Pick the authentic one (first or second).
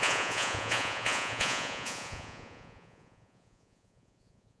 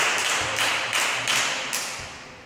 second